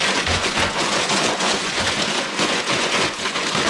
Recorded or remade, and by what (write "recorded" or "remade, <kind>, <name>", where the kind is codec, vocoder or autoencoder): remade, vocoder, Vocos